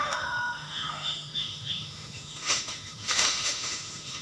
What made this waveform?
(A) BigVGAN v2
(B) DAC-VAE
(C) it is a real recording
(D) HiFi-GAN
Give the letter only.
B